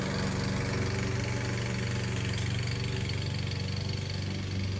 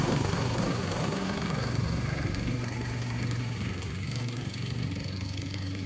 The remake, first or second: second